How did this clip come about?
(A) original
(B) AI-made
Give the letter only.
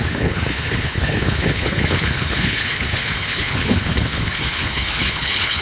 B